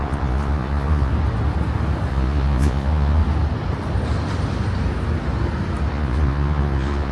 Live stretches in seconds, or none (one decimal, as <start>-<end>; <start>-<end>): 1.1-2.1; 3.2-5.9